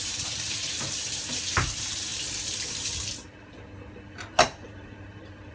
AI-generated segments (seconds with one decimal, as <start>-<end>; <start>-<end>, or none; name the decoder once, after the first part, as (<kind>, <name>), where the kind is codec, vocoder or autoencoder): 0.0-2.1 (vocoder, BigVGAN v2)